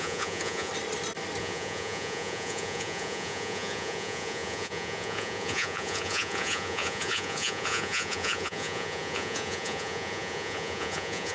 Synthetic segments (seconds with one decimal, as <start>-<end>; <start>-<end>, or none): 0.0-0.7; 1.4-11.3